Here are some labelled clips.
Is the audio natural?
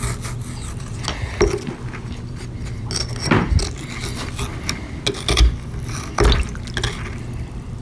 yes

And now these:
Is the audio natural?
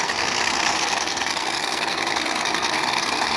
no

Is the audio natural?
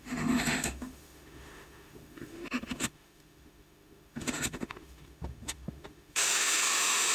no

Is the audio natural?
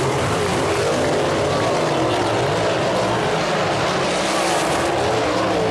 yes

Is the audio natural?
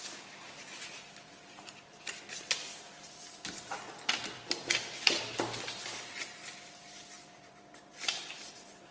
no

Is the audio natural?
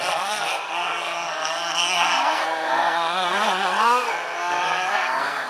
no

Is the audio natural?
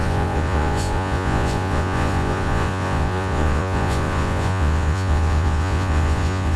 no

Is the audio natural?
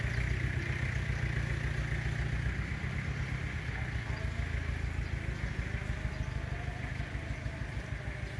yes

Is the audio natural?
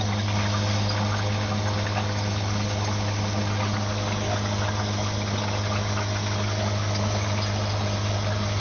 yes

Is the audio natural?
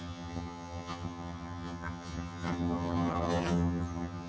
no